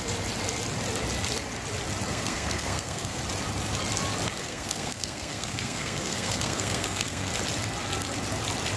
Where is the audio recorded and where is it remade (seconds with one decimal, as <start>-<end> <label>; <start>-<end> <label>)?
0.0-2.1 recorded; 2.1-3.2 remade; 3.2-4.4 recorded; 4.4-7.3 remade; 7.3-8.8 recorded